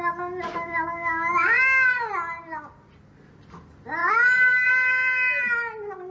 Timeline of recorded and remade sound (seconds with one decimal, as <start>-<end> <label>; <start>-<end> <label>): 0.0-0.5 recorded; 0.5-2.1 remade; 2.1-4.0 recorded; 4.0-4.7 remade; 4.7-6.1 recorded